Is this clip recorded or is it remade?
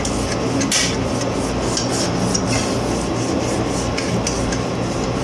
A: recorded